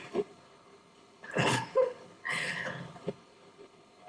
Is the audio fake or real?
fake